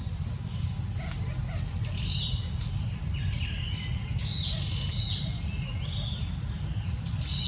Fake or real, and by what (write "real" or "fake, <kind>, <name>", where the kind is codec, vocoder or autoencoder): real